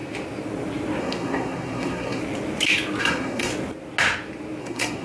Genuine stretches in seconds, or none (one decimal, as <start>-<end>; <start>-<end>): 0.0-1.0; 2.2-3.0; 3.5-4.6